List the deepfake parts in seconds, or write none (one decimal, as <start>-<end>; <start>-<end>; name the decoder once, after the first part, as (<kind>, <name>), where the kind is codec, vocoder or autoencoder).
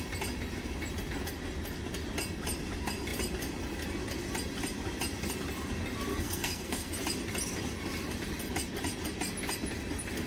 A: 6.1-6.9 (codec, SNAC)